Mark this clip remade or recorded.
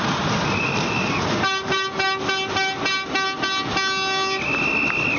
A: recorded